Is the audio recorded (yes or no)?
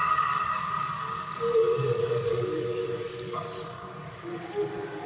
no